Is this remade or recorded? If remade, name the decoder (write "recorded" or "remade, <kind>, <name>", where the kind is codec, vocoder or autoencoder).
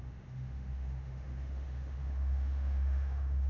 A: remade, autoencoder, DAC-VAE